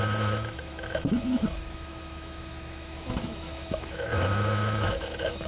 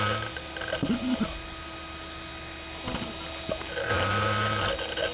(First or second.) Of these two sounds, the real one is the second